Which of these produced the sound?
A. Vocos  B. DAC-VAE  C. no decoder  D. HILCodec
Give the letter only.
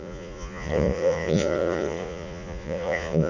A